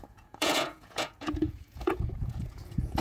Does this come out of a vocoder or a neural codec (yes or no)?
yes